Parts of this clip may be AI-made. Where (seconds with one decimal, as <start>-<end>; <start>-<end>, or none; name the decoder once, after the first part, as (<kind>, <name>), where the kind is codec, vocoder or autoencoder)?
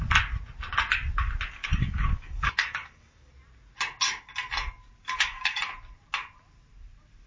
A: 1.6-3.3 (codec, DAC); 5.0-5.6